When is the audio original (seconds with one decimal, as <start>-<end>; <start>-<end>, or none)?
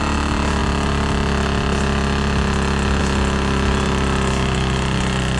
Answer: 0.0-5.4